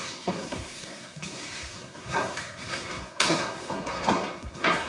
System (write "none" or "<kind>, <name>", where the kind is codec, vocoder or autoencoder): codec, SNAC